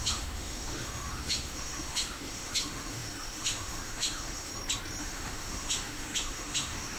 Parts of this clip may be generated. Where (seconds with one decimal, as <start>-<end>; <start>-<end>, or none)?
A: 0.0-4.5; 5.0-7.0